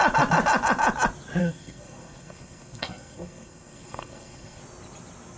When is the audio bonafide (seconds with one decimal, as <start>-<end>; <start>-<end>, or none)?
0.0-1.4; 4.6-5.4